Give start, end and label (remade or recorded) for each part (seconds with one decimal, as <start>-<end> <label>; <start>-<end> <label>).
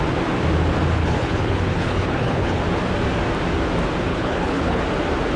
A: 0.0-1.0 recorded; 1.0-2.6 remade; 2.6-4.1 recorded; 4.1-4.8 remade; 4.8-5.4 recorded